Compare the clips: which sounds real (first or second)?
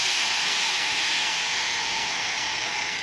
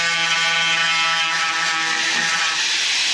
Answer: second